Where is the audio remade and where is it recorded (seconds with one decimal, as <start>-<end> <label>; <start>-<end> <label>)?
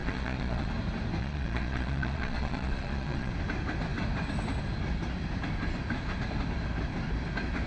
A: 0.0-0.7 remade; 0.7-1.2 recorded; 1.2-3.3 remade; 3.3-7.7 recorded